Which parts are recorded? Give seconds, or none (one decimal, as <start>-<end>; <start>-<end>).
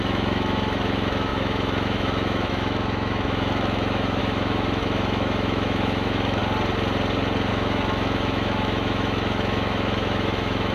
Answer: 6.4-7.5